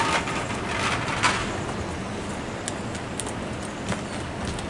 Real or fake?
real